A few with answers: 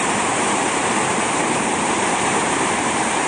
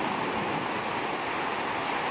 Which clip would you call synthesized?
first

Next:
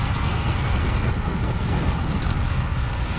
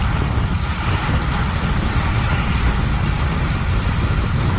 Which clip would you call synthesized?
first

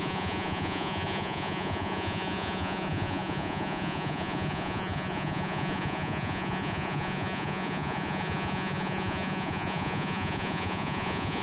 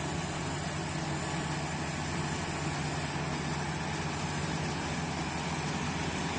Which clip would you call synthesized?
first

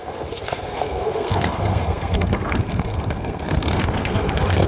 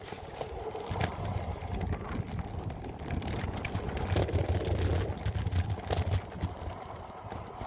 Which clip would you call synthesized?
first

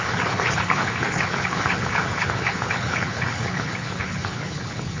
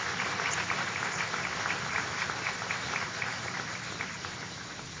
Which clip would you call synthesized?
first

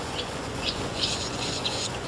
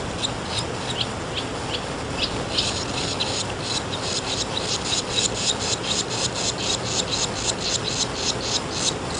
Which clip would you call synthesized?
first